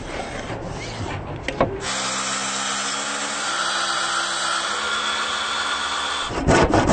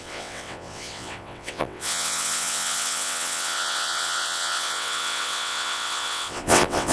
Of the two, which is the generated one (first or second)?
second